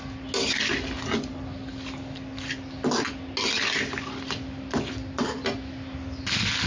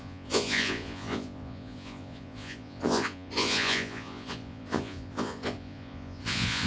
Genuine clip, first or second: first